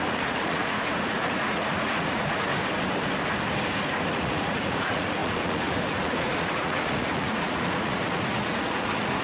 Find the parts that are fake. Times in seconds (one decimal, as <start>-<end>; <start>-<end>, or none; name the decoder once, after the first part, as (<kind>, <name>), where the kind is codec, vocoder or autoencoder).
0.0-2.5 (vocoder, Vocos); 4.1-9.2